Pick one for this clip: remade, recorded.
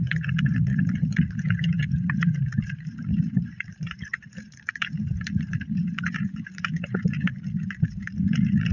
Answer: remade